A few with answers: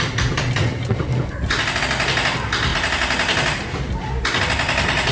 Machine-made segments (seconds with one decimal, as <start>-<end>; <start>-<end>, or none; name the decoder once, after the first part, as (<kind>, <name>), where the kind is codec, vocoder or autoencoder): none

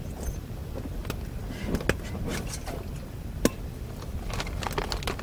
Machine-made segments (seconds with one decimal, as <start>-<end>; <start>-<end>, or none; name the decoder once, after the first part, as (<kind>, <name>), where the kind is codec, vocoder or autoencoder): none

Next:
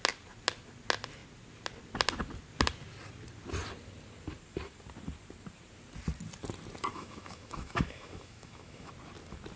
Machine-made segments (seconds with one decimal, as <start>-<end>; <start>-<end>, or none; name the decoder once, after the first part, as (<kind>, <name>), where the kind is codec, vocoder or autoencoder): 6.9-8.9 (autoencoder, DAC-VAE)

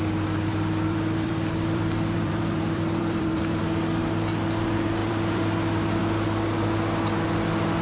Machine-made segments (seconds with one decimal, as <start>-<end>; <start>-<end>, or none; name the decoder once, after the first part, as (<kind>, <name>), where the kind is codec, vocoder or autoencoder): 0.5-3.6 (vocoder, BigVGAN v2); 5.0-5.6